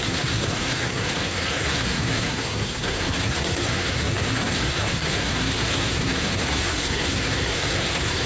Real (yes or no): no